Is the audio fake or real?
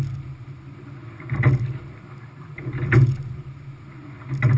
real